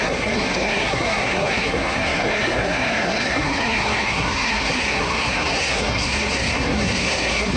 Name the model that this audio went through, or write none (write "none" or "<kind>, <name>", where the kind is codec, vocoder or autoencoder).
codec, SNAC